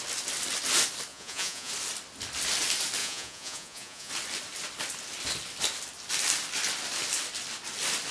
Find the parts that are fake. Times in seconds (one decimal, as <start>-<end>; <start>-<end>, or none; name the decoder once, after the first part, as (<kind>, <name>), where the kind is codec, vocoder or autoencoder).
1.1-1.7 (vocoder, Vocos); 3.0-4.1

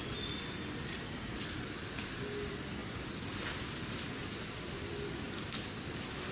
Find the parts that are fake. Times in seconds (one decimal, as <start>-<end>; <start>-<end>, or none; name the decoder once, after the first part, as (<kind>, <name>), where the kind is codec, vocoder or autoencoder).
none

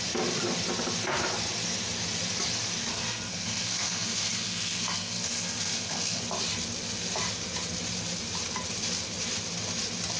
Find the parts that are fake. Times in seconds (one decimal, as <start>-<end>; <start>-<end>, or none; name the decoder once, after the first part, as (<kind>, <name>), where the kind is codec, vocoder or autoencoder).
2.8-6.2 (codec, SNAC)

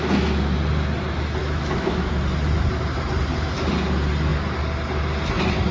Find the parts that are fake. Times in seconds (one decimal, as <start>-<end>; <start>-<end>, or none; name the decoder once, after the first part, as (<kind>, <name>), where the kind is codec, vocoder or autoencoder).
1.4-2.1 (autoencoder, DAC-VAE)

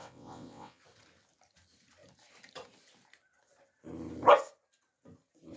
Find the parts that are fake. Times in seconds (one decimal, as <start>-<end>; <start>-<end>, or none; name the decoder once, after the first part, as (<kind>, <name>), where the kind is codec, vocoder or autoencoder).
0.0-0.8 (vocoder, WaveNeXt)

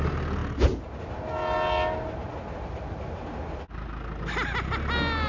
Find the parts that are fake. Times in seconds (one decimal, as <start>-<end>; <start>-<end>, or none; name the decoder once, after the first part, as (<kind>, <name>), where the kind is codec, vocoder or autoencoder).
none

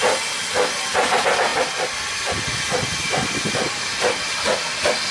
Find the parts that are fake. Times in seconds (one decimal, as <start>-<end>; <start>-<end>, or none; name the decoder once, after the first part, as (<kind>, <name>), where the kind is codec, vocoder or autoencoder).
none